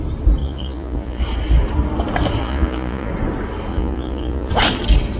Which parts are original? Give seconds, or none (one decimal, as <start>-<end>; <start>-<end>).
0.0-0.4; 1.2-2.4; 3.1-3.7; 4.5-5.2